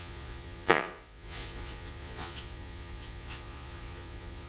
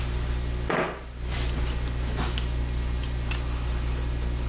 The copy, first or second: first